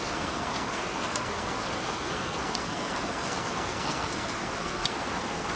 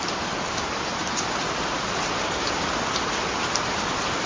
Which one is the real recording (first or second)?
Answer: second